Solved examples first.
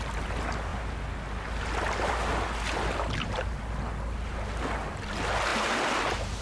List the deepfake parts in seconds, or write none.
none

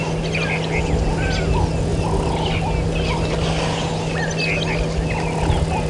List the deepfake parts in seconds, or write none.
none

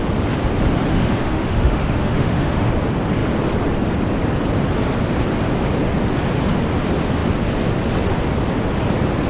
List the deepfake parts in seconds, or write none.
0.9-2.7 (autoencoder, DAC-VAE)

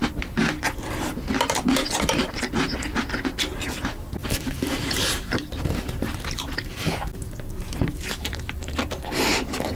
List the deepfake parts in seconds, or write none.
4.2-8.4 (vocoder, BigVGAN v2)

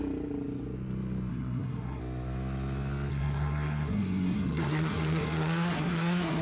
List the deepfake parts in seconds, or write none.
1.3-2.0 (codec, SNAC); 3.1-6.4

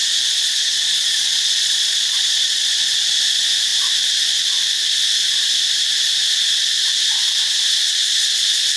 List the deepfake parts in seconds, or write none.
0.0-3.2 (vocoder, Vocos)